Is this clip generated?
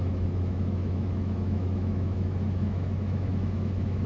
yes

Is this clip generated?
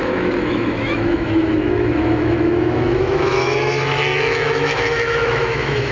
yes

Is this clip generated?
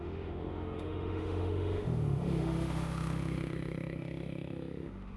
yes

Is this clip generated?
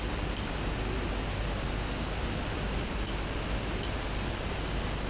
no